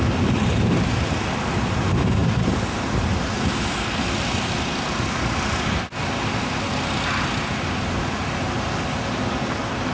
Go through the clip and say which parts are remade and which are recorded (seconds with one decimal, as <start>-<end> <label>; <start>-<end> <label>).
0.0-9.9 recorded